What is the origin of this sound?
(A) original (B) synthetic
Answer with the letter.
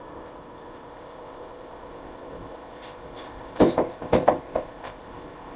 B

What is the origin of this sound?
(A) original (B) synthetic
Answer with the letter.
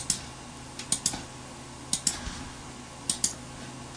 A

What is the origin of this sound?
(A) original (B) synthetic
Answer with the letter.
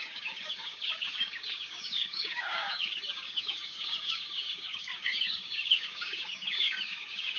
B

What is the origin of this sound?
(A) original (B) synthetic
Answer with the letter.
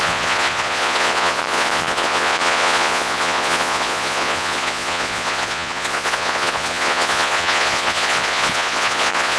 B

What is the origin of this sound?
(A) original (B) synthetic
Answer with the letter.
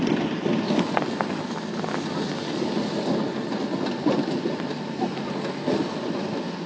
A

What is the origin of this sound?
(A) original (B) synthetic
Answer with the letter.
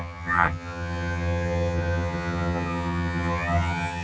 B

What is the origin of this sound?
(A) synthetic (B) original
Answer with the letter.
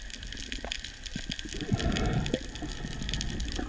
B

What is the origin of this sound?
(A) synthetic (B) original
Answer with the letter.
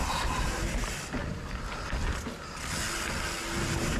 B